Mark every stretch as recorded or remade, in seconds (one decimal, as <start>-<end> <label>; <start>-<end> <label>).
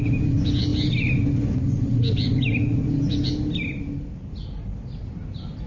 0.0-5.7 recorded